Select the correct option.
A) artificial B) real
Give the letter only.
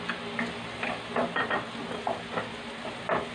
B